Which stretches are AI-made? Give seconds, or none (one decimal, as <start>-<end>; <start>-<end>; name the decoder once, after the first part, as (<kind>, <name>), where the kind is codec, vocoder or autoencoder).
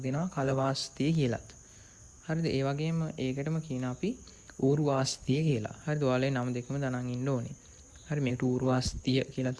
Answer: 0.0-0.8 (codec, HILCodec); 4.6-5.5; 8.3-9.6